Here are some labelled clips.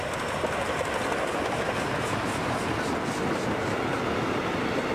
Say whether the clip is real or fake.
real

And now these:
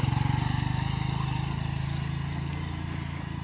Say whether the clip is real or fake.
real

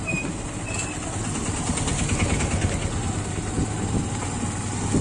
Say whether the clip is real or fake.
real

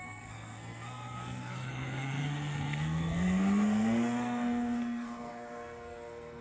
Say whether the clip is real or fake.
fake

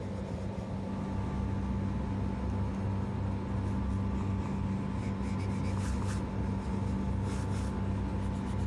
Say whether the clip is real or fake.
real